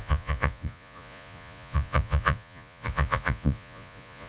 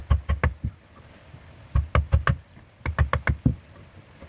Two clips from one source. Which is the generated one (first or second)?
first